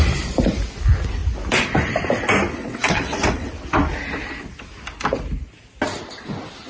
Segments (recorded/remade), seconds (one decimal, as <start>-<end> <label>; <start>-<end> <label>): 0.0-2.6 recorded; 2.6-3.5 remade; 3.5-6.7 recorded